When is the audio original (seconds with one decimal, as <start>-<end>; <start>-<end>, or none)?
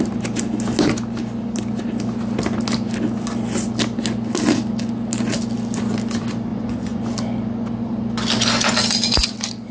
0.0-6.5; 7.0-9.7